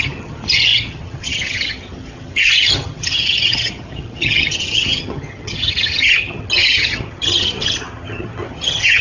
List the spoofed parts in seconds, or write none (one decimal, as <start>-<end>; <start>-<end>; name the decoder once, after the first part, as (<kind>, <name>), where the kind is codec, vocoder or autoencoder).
0.0-9.0 (vocoder, HiFi-GAN)